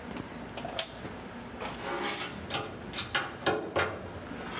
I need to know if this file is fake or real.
real